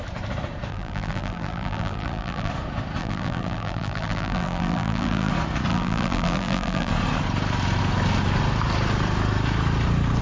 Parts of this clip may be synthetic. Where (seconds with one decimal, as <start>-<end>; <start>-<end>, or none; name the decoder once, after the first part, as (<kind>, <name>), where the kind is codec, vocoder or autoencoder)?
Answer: 0.7-2.5 (vocoder, BigVGAN v2); 3.0-5.3; 5.7-6.9